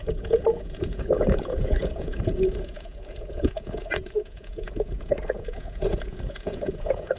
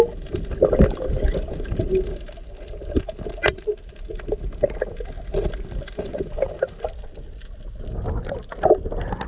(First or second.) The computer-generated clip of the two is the first